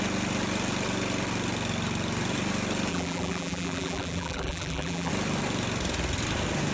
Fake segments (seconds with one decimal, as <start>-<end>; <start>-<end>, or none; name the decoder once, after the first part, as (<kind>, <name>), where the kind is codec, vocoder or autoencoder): 2.9-5.1 (vocoder, BigVGAN v2)